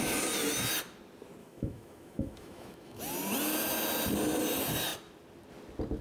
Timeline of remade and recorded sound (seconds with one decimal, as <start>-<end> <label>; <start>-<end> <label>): 0.0-1.4 recorded; 1.4-3.0 remade; 3.0-6.0 recorded